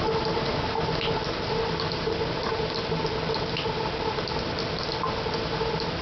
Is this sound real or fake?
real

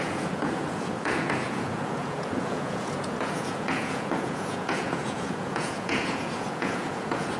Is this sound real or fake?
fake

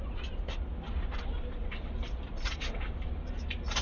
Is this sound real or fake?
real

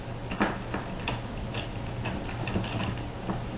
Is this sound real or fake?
real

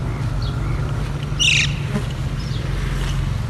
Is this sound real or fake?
real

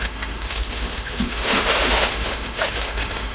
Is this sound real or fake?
fake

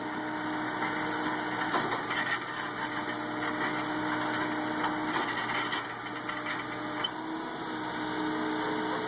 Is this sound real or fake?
real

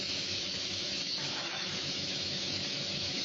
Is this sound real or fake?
fake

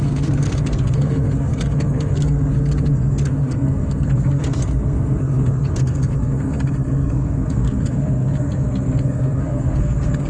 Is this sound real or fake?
fake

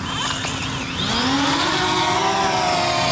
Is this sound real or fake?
fake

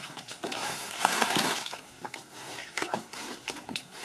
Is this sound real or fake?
fake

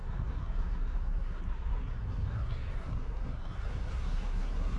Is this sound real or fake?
fake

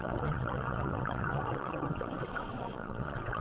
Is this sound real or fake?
fake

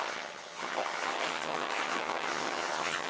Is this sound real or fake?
fake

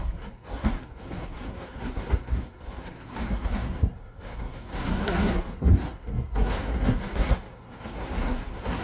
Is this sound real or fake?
fake